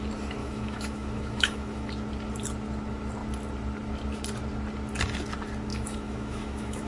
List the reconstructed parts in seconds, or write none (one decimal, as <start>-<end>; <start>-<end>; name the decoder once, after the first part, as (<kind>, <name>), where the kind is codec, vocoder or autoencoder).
0.4-1.9 (autoencoder, DAC-VAE); 5.7-6.9

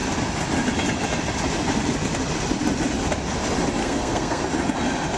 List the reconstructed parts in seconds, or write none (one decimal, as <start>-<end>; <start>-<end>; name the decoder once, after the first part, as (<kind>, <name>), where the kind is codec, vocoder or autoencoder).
3.8-4.4 (codec, SNAC)

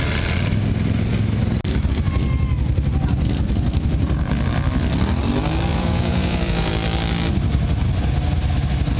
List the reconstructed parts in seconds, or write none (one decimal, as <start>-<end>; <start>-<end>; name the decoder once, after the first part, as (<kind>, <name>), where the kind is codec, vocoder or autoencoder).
5.7-6.7 (vocoder, Vocos)

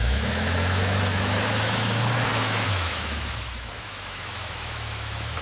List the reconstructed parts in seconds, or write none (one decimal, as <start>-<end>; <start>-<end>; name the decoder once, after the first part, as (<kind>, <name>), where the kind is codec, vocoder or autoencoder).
0.0-5.4 (autoencoder, DAC-VAE)

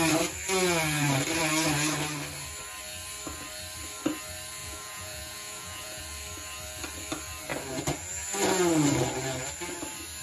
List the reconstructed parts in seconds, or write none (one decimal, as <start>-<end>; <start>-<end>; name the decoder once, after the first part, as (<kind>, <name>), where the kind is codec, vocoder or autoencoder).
4.6-6.0 (vocoder, Vocos)

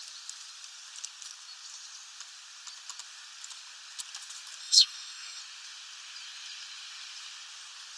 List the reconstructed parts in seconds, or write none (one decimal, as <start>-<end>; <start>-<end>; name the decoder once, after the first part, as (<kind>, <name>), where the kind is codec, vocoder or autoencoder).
4.6-5.4 (codec, SNAC)

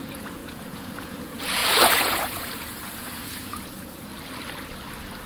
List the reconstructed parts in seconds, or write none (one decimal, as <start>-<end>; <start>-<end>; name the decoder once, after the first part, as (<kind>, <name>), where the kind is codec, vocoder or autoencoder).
0.0-4.1 (vocoder, Vocos)

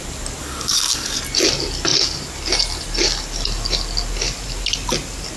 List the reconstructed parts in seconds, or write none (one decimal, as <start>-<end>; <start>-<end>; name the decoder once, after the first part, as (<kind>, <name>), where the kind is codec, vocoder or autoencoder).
0.4-1.2 (codec, DAC)